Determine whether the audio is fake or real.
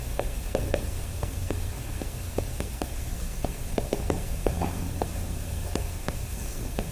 fake